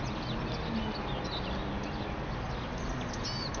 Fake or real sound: real